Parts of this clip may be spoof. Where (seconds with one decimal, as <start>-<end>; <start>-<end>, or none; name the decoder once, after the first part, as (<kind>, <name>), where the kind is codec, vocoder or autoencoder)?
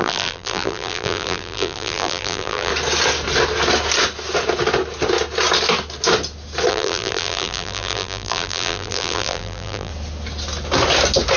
0.0-2.7 (vocoder, BigVGAN v2); 6.7-9.9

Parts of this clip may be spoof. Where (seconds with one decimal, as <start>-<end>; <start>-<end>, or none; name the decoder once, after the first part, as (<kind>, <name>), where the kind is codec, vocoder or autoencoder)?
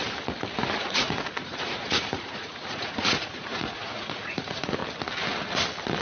0.8-4.8 (vocoder, Vocos)